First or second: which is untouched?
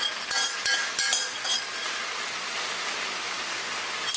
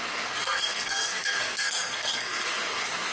first